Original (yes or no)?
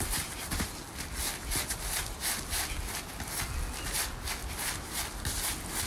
yes